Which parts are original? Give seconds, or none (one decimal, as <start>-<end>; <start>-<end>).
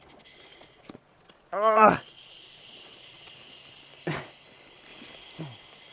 0.0-0.5; 3.4-5.9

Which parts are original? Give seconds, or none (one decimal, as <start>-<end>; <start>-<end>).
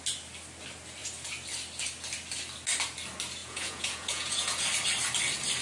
0.0-3.4; 4.6-5.6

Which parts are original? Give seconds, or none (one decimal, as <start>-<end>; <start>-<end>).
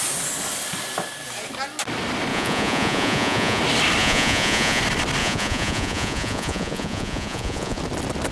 0.0-2.3; 3.6-4.0; 4.8-5.2; 7.8-8.3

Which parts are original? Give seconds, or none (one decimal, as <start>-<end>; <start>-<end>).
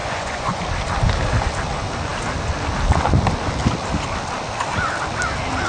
0.6-5.7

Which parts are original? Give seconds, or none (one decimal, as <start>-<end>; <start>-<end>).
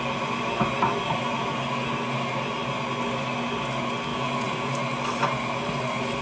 0.0-4.1; 4.7-6.2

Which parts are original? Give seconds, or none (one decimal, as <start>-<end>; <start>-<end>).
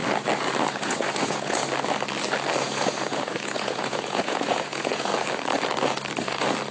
0.0-0.7; 1.6-2.6; 5.1-6.7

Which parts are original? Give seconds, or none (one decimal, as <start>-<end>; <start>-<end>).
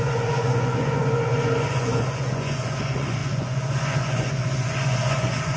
none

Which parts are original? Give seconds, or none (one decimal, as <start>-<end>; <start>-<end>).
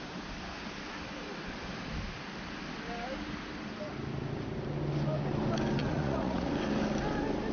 0.0-5.8; 6.5-7.5